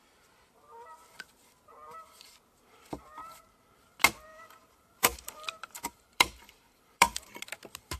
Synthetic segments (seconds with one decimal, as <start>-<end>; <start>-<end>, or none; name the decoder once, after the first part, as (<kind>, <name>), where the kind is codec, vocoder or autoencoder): 4.3-7.4 (vocoder, BigVGAN v2)